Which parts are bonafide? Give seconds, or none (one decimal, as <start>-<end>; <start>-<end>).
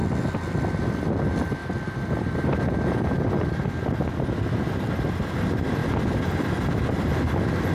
0.0-7.7